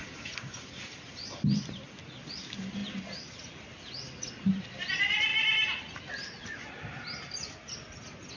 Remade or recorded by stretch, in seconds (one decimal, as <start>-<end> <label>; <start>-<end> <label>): 0.0-8.4 recorded